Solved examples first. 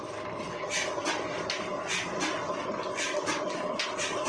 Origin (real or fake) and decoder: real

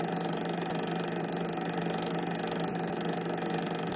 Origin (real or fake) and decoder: real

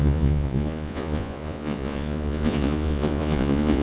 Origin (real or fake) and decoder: fake, vocoder, Vocos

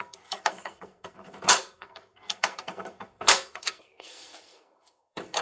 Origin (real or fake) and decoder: fake, codec, SNAC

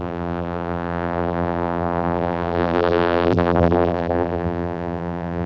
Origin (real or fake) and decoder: fake, vocoder, BigVGAN v2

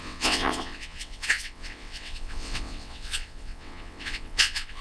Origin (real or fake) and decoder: fake, vocoder, WaveNeXt